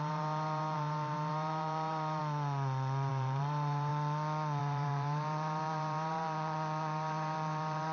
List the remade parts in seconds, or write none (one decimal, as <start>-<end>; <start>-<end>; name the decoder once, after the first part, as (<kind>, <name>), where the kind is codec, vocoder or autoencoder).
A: 0.0-2.2 (vocoder, BigVGAN v2); 3.1-3.9; 4.6-7.9